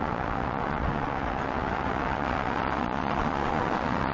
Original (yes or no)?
no